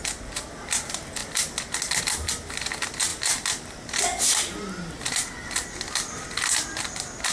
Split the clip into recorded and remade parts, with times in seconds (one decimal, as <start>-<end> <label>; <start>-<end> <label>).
0.0-7.3 recorded